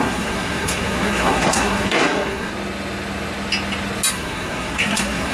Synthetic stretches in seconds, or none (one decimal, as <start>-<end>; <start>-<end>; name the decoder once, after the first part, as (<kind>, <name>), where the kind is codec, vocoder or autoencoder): 0.0-2.5 (codec, SNAC); 4.1-5.3